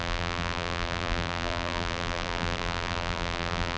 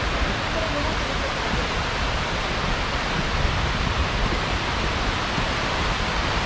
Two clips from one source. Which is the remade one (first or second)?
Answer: first